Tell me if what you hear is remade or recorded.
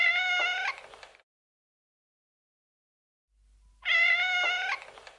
recorded